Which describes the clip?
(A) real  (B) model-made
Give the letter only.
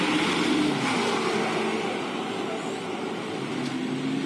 A